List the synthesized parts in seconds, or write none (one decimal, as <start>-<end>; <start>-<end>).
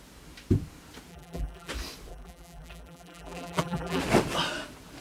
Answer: 1.1-1.7; 2.1-4.0